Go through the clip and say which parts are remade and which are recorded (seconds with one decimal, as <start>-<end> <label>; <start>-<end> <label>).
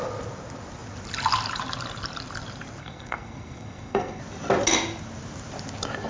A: 0.0-2.8 recorded; 2.8-4.2 remade; 4.2-6.1 recorded